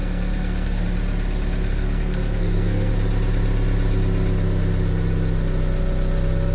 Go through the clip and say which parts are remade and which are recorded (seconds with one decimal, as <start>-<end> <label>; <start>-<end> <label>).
0.0-0.8 remade; 0.8-1.7 recorded; 1.7-2.9 remade; 2.9-6.5 recorded